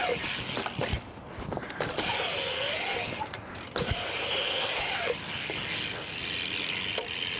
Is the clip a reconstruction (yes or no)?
no